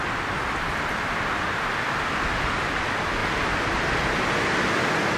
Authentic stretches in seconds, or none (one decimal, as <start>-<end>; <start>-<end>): 0.0-5.2